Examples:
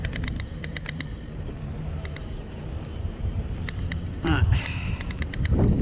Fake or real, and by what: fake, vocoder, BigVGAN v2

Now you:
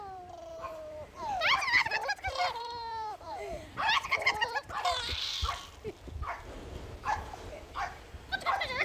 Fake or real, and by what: fake, vocoder, BigVGAN v2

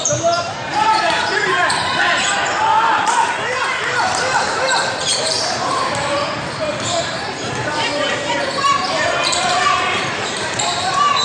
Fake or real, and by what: fake, vocoder, BigVGAN v2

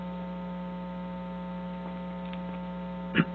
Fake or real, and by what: real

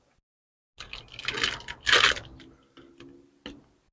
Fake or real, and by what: real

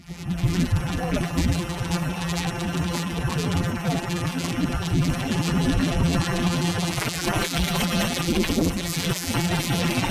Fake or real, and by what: fake, vocoder, BigVGAN v2